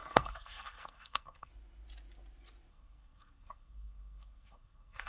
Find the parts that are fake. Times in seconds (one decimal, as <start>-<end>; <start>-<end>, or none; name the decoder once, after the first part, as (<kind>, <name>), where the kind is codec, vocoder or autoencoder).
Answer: 0.0-1.5 (codec, SNAC); 2.7-5.1